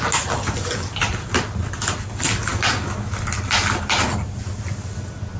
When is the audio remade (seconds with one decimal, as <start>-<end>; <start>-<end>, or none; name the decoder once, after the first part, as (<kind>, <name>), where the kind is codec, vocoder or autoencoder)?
none